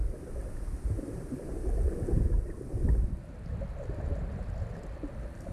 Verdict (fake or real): real